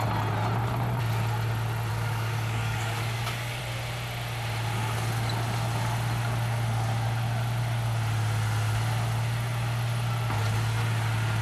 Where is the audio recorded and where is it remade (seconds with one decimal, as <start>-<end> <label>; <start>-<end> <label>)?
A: 0.0-1.9 recorded; 1.9-3.6 remade; 3.6-11.4 recorded